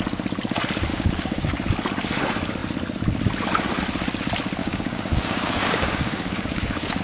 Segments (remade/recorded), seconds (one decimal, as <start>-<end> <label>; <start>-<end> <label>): 0.0-0.9 recorded; 0.9-1.5 remade; 1.5-4.6 recorded; 4.6-7.0 remade